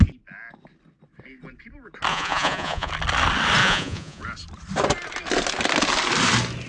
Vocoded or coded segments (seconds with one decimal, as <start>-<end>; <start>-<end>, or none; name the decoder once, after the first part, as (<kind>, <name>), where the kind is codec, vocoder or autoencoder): 2.1-2.9 (vocoder, Vocos); 3.6-4.2